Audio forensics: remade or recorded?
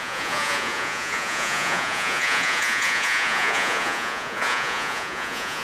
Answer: remade